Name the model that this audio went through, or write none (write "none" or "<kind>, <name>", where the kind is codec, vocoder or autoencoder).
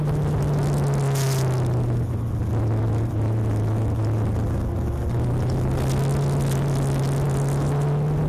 none